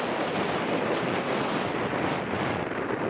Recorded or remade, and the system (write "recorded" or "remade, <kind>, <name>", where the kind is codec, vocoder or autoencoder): recorded